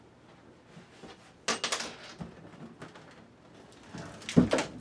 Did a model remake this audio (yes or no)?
no